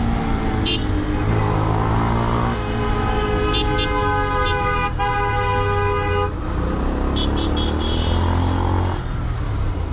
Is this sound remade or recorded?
recorded